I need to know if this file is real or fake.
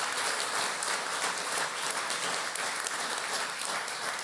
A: real